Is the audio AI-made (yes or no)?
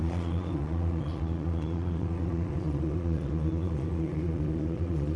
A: yes